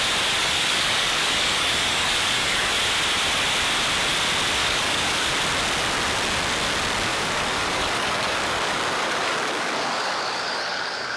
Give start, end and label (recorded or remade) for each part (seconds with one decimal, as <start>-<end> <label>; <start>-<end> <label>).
0.0-0.4 recorded; 0.4-2.7 remade; 2.7-4.6 recorded; 4.6-5.3 remade; 5.3-7.1 recorded; 7.1-11.2 remade